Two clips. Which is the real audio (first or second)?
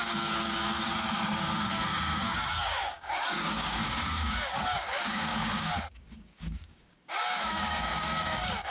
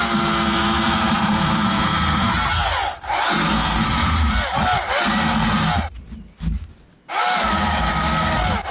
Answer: second